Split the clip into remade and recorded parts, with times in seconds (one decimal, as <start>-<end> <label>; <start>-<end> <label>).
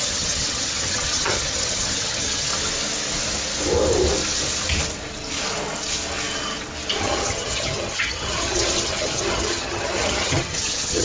0.0-2.5 remade; 2.5-7.0 recorded; 7.0-11.0 remade